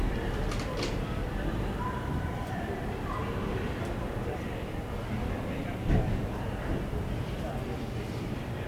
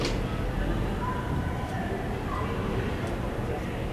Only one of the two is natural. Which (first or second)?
second